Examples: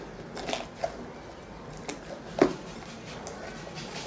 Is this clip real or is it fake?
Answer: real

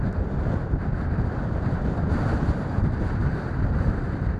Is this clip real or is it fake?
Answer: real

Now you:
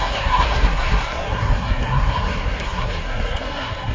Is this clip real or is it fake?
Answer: fake